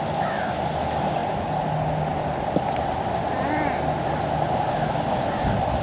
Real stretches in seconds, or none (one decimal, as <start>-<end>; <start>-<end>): 0.0-5.8